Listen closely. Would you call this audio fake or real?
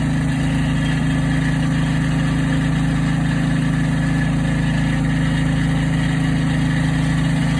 real